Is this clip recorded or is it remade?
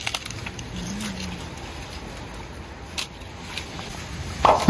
recorded